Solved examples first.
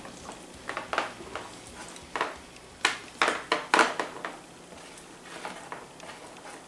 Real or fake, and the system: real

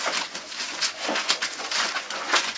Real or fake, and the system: fake, vocoder, Vocos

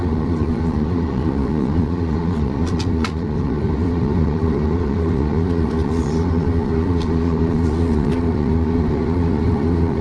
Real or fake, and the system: fake, vocoder, Vocos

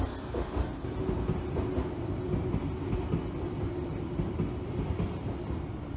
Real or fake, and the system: real